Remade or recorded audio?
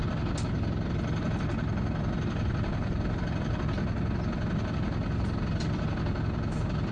recorded